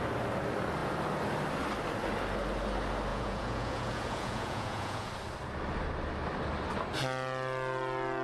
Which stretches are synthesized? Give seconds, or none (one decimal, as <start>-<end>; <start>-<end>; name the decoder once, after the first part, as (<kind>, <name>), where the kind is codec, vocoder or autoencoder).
3.1-5.1 (vocoder, Vocos)